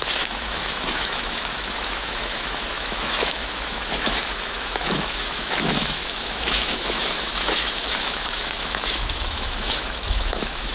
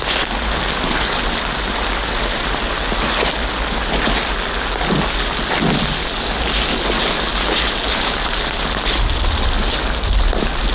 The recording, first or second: second